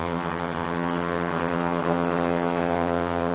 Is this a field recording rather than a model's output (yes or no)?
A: no